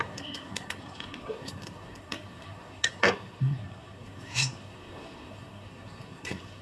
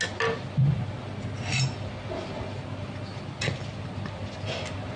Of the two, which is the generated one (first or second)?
first